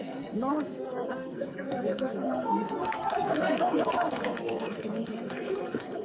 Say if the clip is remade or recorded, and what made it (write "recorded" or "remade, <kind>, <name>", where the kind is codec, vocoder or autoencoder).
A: remade, codec, SNAC